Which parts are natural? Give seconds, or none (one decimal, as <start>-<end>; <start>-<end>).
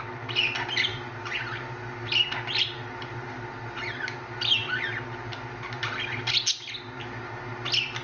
0.0-0.9; 2.1-4.6; 6.3-8.0